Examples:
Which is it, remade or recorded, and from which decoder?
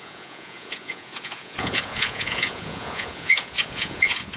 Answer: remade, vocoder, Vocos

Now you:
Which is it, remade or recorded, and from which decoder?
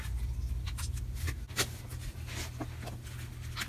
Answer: recorded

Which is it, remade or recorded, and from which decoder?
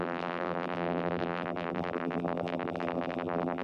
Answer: remade, vocoder, BigVGAN v2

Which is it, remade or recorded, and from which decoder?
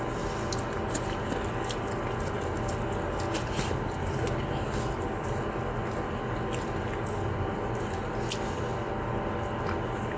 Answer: recorded